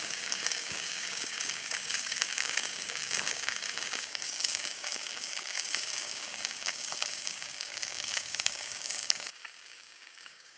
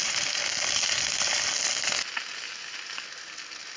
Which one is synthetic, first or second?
first